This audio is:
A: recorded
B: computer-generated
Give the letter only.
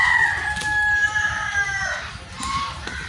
A